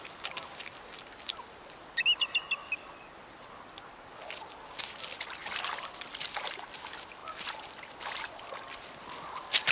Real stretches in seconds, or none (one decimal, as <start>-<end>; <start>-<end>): 0.0-9.7